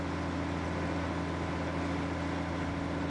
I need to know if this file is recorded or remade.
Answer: recorded